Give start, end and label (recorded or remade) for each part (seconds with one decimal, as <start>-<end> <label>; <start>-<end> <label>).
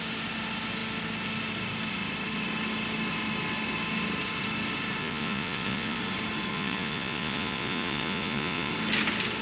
0.0-5.0 recorded; 5.0-6.0 remade; 6.0-6.5 recorded; 6.5-8.7 remade; 8.7-9.4 recorded